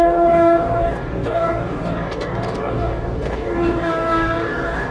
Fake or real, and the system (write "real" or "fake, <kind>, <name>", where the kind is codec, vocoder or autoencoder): fake, codec, DAC